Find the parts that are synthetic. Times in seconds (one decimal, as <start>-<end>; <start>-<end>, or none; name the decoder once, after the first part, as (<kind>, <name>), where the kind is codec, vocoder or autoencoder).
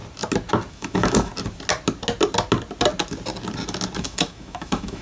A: 0.7-1.3 (autoencoder, DAC-VAE); 4.0-5.0